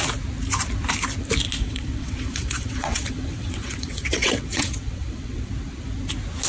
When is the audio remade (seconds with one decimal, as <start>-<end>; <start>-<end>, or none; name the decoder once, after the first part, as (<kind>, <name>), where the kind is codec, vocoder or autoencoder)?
1.6-5.5 (vocoder, WaveNeXt)